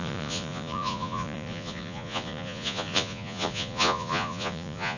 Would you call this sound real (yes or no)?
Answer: no